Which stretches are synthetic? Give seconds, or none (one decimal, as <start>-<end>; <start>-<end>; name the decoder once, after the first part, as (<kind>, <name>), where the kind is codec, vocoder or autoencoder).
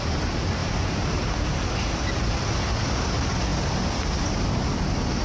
0.6-1.2 (vocoder, BigVGAN v2)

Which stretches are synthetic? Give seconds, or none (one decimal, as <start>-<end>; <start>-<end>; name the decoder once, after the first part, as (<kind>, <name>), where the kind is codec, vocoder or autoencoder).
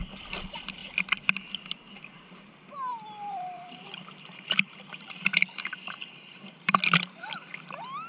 2.9-6.8 (vocoder, BigVGAN v2)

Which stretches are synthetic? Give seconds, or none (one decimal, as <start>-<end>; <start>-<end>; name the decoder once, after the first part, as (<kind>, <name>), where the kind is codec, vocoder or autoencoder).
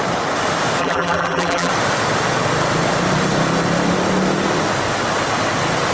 0.8-1.7 (vocoder, BigVGAN v2)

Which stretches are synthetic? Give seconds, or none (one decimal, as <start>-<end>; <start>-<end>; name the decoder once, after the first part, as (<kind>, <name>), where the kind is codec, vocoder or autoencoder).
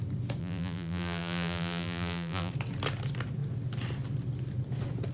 0.4-2.5 (vocoder, BigVGAN v2)